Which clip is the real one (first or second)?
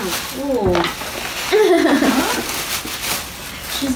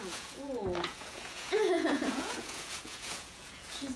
first